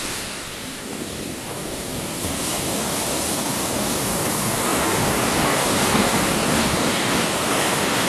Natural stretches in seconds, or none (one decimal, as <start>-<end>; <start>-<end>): none